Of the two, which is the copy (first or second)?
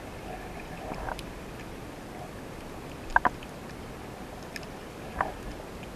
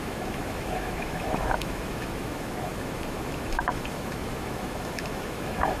second